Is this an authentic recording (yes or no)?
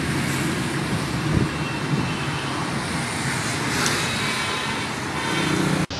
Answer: yes